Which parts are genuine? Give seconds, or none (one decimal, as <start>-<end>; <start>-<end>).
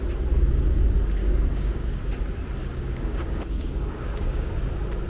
0.0-1.2; 1.9-2.6; 4.5-5.1